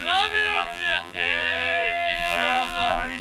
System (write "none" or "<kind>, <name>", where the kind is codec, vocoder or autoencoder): vocoder, BigVGAN v2